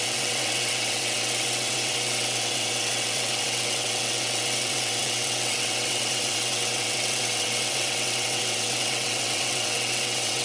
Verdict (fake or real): fake